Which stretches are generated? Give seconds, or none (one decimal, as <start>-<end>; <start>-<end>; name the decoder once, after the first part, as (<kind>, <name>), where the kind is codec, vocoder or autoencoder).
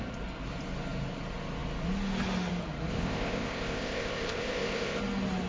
2.9-5.0 (codec, ZipCodec)